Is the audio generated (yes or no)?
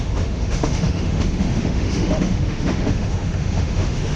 yes